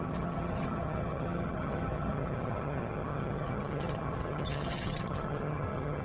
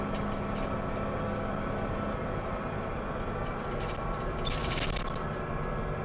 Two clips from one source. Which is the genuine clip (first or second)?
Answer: second